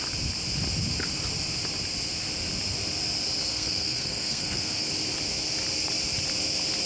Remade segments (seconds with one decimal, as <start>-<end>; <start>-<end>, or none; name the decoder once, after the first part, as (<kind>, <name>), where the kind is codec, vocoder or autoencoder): 3.5-4.9 (codec, SNAC)